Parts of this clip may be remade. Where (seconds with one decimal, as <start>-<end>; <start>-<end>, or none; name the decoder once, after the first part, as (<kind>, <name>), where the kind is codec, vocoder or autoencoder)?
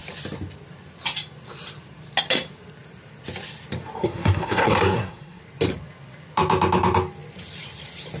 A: 4.0-5.4 (codec, SNAC)